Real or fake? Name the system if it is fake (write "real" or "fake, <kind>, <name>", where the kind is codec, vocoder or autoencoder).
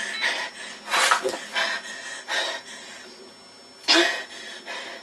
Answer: real